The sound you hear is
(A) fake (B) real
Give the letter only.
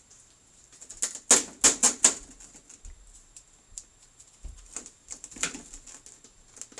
B